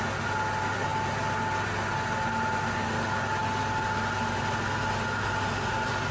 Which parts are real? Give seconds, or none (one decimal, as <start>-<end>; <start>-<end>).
0.0-6.1

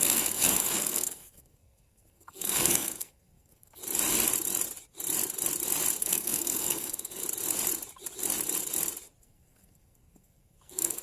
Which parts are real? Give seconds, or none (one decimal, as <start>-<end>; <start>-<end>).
3.8-6.0; 7.2-9.2

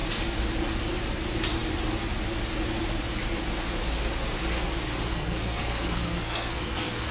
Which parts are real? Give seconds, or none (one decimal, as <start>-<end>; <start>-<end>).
0.0-5.1

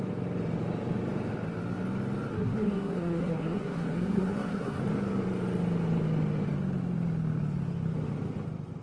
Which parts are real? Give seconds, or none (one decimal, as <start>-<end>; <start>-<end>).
0.0-2.3; 4.8-8.8

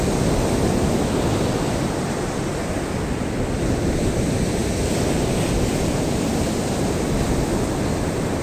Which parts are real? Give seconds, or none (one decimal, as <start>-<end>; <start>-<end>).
0.0-8.4